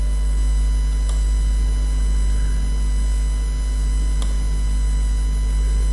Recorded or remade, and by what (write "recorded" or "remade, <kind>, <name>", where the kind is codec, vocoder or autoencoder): recorded